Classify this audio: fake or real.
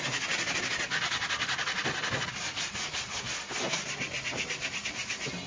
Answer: real